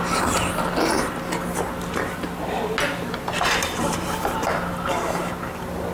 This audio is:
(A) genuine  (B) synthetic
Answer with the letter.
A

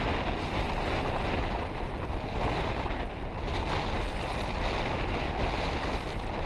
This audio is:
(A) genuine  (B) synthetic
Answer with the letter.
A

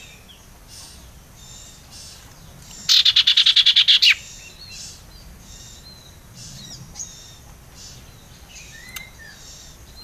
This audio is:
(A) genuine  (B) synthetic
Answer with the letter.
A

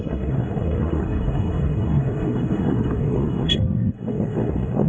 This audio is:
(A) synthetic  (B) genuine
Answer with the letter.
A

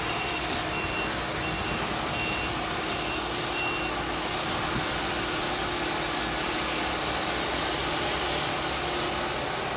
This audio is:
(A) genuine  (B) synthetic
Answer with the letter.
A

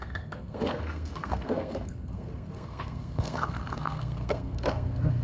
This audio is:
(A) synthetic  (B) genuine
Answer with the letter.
A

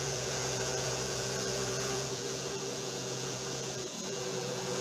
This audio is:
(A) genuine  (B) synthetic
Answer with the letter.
B